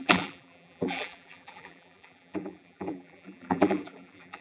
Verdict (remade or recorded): remade